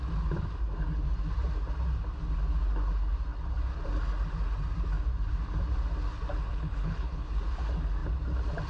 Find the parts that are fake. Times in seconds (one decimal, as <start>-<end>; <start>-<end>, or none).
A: 6.5-7.3